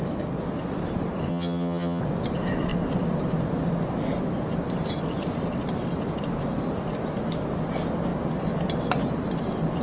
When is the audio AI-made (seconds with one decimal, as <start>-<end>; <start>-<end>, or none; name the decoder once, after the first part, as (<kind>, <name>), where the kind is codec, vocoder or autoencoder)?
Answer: 1.3-2.0 (vocoder, HiFi-GAN)